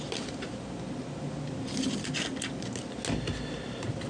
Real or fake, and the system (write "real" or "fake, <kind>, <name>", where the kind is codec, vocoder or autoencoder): real